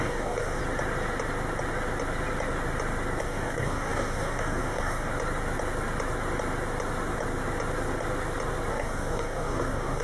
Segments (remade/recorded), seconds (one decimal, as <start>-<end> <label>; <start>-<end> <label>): 0.0-0.6 remade; 0.6-3.2 recorded; 3.2-5.1 remade; 5.1-8.7 recorded; 8.7-10.0 remade